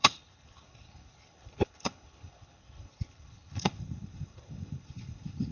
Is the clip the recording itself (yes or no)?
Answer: no